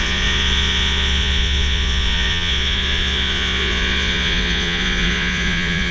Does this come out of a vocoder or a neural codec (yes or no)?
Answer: yes